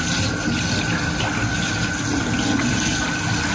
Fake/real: real